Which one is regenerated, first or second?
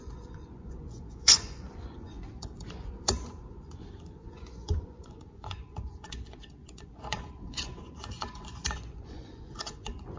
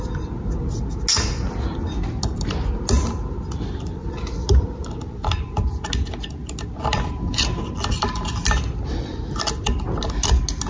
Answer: first